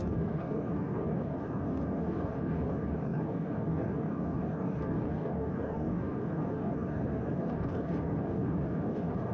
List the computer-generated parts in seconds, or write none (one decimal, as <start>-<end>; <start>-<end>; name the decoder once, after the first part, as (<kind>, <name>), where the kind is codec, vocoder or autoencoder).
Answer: 0.0-9.3 (codec, DAC)